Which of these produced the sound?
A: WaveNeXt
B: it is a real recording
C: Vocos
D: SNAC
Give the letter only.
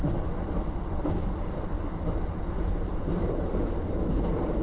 B